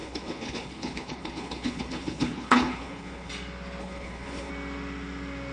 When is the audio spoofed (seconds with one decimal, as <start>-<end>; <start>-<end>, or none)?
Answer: 0.0-3.3; 3.8-4.5